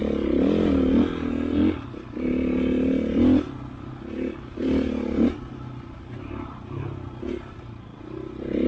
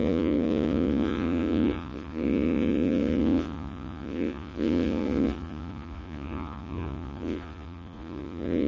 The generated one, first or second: second